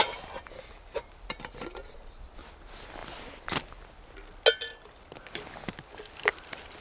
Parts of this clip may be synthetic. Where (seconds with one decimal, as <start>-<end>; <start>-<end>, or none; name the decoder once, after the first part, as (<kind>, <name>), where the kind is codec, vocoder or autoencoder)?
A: none